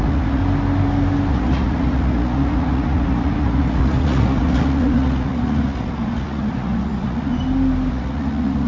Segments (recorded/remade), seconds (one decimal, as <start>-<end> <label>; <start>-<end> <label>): 0.0-0.4 remade; 0.4-1.3 recorded; 1.3-7.3 remade; 7.3-7.9 recorded; 7.9-8.7 remade